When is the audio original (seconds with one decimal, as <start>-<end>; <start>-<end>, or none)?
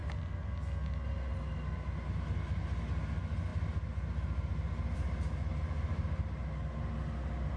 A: 0.0-7.6